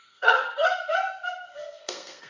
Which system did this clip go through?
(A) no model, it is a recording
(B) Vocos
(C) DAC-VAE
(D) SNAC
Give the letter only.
D